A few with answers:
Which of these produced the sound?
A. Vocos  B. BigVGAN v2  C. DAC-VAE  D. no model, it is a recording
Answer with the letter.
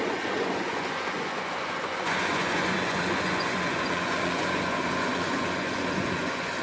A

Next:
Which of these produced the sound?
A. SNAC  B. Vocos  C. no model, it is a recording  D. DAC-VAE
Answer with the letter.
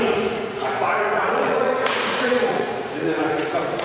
B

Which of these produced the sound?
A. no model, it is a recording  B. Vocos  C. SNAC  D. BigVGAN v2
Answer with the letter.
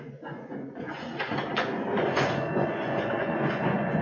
B